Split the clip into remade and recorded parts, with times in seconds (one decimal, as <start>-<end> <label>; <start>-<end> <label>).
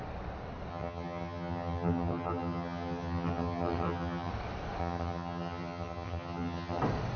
0.0-0.7 recorded; 0.7-4.3 remade; 4.3-4.8 recorded; 4.8-6.8 remade; 6.8-7.2 recorded